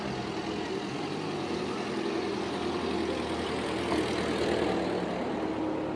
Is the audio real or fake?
real